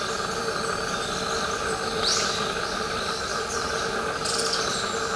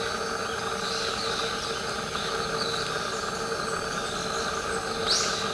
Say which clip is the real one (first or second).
second